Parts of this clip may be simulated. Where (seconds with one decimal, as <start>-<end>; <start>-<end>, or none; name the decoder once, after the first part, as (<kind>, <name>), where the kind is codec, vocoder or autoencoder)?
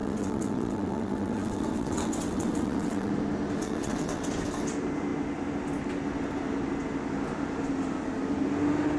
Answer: 0.0-3.1 (vocoder, WaveNeXt); 3.6-4.3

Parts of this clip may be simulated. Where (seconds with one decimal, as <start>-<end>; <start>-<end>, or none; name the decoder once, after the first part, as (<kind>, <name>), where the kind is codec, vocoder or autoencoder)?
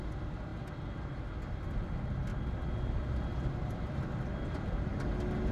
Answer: none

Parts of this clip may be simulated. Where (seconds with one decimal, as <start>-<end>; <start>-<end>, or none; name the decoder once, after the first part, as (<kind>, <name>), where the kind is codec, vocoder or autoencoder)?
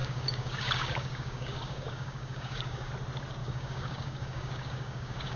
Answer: 0.0-2.9 (codec, DAC); 3.4-5.4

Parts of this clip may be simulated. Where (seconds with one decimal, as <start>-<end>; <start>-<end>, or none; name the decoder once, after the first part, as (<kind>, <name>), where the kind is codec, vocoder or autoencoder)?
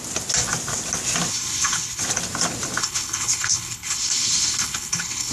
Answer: 1.3-2.0 (codec, HILCodec); 2.8-5.3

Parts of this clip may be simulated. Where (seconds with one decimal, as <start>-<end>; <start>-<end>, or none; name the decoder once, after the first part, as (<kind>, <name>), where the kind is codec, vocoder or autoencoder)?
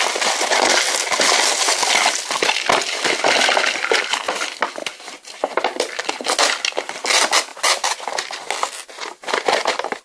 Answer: 4.8-6.1 (vocoder, BigVGAN v2); 7.5-8.0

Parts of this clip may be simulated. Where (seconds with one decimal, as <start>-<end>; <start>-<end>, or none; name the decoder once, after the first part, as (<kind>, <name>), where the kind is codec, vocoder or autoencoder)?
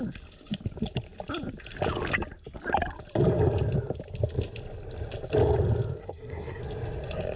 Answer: 6.0-6.6 (codec, SNAC)